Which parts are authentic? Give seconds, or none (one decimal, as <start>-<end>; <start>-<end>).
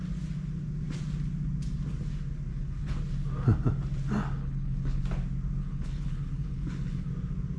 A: 0.0-2.5; 3.0-4.4; 5.0-5.6; 7.1-7.6